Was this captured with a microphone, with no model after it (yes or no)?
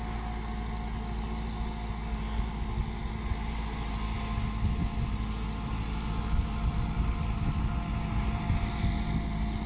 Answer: yes